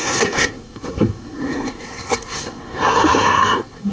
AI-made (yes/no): yes